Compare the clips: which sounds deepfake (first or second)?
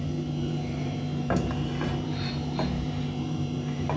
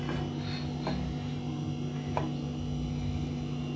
first